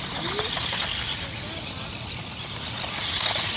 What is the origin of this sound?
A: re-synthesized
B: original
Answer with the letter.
B